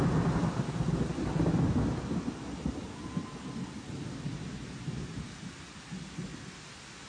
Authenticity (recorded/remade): recorded